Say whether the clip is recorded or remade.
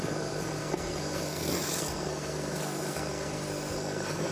remade